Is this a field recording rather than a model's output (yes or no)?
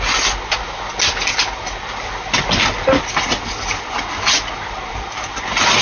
yes